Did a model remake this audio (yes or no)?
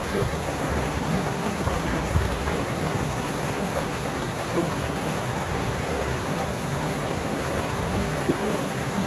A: yes